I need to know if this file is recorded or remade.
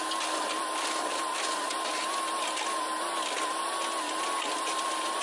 recorded